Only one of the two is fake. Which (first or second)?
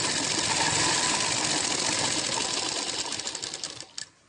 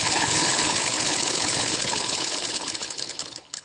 second